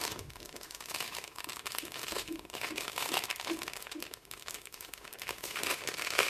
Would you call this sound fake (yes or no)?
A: yes